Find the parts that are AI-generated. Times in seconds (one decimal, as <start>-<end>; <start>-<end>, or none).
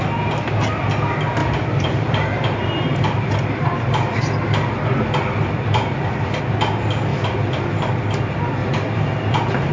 1.4-6.4; 7.1-7.7; 8.6-9.7